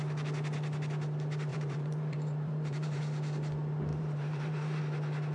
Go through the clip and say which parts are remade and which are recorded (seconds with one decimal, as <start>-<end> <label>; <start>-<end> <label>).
0.0-1.5 recorded; 1.5-3.0 remade; 3.0-3.9 recorded; 3.9-4.8 remade; 4.8-5.3 recorded